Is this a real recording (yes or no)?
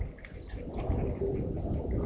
yes